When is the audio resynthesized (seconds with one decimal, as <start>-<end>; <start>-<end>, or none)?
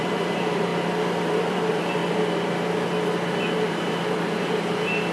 0.0-0.7; 1.3-2.0; 3.4-5.1